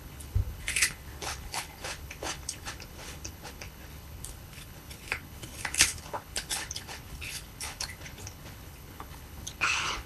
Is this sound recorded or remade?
remade